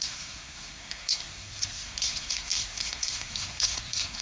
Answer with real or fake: fake